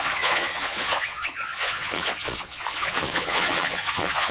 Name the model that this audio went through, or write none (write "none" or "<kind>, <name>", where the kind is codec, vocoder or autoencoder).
vocoder, Vocos